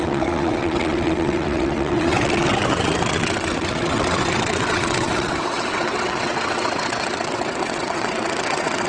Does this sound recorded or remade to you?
remade